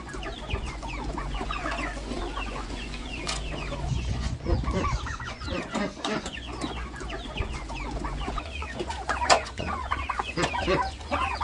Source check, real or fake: fake